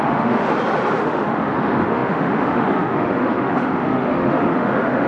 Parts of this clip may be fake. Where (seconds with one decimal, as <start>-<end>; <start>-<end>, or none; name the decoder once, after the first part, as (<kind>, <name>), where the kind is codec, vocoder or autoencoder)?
0.0-0.5 (autoencoder, DAC-VAE); 1.0-5.1